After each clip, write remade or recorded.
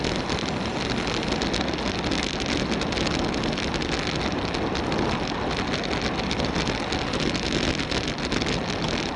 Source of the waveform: recorded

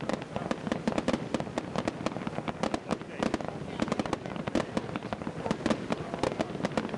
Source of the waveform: recorded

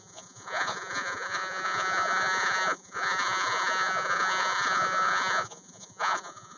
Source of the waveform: remade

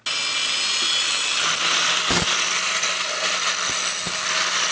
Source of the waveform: recorded